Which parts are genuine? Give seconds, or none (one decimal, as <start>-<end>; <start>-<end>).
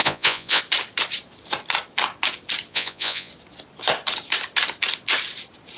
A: 0.6-2.7; 3.3-5.8